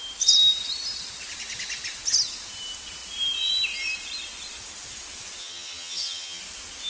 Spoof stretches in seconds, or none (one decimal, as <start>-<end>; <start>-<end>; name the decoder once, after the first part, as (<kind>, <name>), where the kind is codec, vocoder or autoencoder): 5.4-6.4 (vocoder, HiFi-GAN)